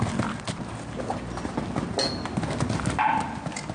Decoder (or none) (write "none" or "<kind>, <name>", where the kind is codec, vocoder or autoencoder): none